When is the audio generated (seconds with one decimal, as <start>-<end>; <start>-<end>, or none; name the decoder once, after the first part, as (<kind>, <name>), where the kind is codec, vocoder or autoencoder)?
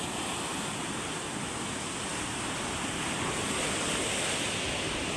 none